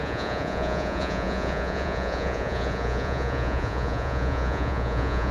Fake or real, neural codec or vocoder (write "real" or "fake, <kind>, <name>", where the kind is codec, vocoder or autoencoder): fake, vocoder, Vocos